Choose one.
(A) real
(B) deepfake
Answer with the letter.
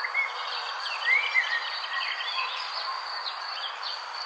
A